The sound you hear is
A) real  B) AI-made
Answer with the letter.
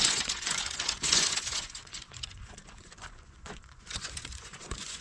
B